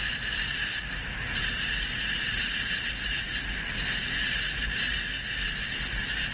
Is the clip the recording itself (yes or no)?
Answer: yes